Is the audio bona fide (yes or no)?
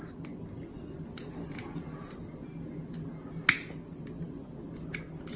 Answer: yes